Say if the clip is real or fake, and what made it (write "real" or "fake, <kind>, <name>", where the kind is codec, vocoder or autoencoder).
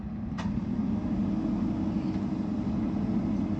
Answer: real